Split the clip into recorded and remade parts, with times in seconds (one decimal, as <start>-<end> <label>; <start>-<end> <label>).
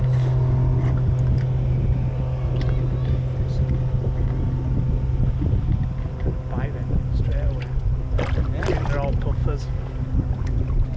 0.0-11.0 recorded